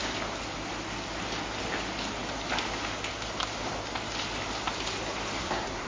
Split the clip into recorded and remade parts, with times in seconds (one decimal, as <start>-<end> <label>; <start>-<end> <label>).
0.0-5.4 recorded; 5.4-5.9 remade